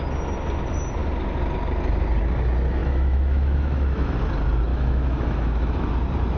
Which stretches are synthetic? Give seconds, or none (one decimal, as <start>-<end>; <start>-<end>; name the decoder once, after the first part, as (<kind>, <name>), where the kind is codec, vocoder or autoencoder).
2.8-4.1 (autoencoder, DAC-VAE); 4.7-5.9